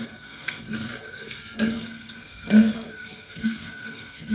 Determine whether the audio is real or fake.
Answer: fake